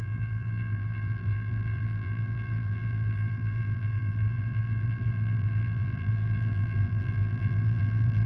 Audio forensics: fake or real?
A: fake